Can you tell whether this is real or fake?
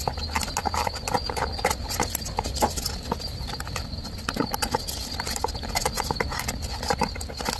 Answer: real